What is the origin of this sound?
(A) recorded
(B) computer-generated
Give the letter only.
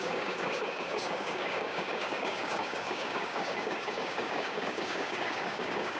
B